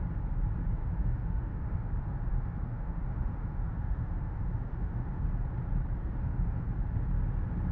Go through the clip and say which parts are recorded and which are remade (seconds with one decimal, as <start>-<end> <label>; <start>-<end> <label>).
0.0-0.8 recorded; 0.8-1.9 remade; 1.9-2.3 recorded; 2.3-5.2 remade; 5.2-6.0 recorded; 6.0-6.7 remade; 6.7-7.7 recorded